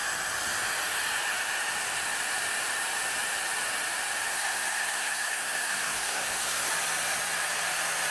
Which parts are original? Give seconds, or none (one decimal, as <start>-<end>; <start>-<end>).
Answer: 0.0-4.3; 6.7-8.1